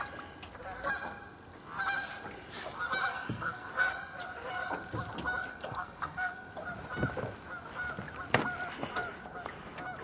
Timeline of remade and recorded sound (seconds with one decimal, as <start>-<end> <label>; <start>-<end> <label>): 0.0-3.1 recorded; 3.1-3.7 remade; 3.7-5.5 recorded; 5.5-6.5 remade; 6.5-10.0 recorded